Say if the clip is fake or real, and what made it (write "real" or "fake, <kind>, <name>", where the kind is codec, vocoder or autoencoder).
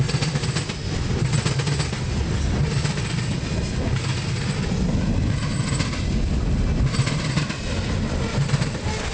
real